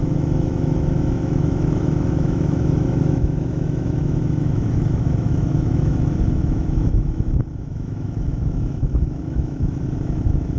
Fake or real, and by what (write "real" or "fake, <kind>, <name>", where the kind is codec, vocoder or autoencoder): fake, autoencoder, DAC-VAE